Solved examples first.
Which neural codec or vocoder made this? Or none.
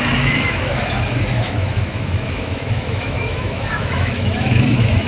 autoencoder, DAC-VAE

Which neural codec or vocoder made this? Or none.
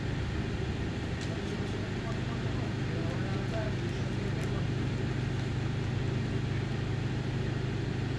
none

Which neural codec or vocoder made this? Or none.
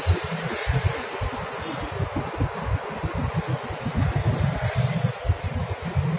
none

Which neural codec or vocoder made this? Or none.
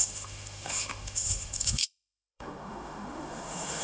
autoencoder, DAC-VAE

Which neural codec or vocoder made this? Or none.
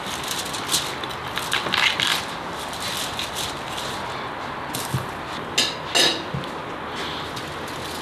none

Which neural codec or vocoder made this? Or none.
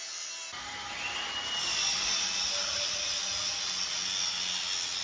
none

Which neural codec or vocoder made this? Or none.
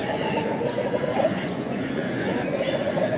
vocoder, Vocos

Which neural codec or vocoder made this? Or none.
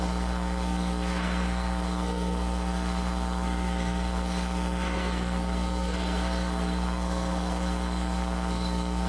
codec, SNAC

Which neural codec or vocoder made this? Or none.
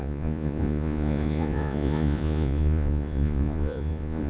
vocoder, Vocos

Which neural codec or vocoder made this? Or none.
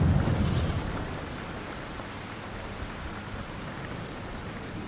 none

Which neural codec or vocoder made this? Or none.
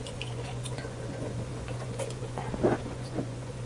vocoder, Vocos